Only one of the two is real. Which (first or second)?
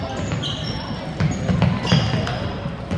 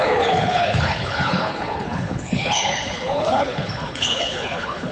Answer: first